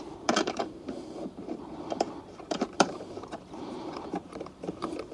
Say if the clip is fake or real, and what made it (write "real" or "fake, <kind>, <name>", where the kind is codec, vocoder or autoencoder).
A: fake, vocoder, BigVGAN v2